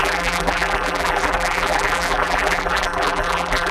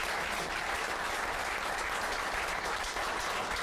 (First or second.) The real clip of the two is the second